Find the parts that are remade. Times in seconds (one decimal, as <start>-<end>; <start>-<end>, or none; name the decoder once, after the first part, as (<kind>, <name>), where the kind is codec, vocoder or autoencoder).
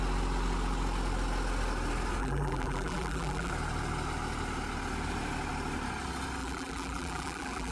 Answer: 2.2-3.5 (vocoder, BigVGAN v2); 6.4-7.7